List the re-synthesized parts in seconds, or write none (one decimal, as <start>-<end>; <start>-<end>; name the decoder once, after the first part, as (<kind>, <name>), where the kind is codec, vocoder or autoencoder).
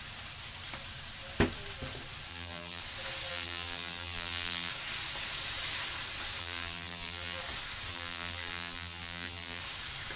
2.3-2.8 (vocoder, BigVGAN v2); 3.3-4.7; 6.4-7.4; 7.9-9.6